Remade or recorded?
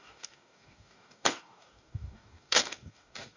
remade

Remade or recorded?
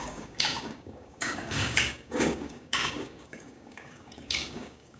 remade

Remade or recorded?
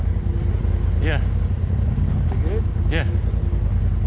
recorded